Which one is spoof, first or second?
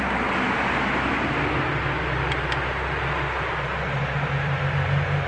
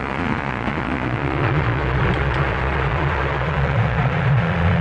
second